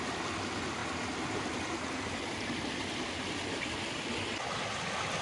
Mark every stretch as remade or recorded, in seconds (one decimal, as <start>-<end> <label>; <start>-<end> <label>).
0.0-5.2 recorded